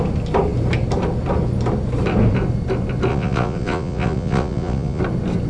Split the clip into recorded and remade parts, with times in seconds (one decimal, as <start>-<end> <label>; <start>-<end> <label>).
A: 0.0-3.1 recorded; 3.1-5.0 remade; 5.0-5.5 recorded